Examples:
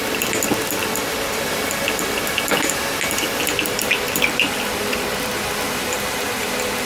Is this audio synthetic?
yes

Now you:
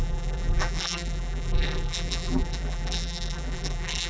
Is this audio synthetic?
yes